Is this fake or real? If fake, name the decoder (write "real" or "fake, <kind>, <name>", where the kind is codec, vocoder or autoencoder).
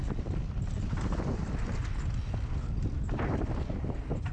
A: real